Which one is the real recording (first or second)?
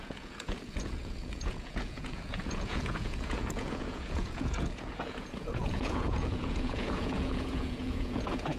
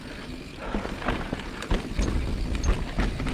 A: second